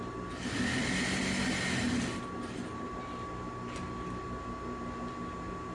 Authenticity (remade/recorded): recorded